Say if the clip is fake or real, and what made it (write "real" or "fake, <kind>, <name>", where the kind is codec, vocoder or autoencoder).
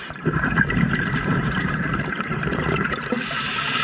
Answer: fake, vocoder, BigVGAN v2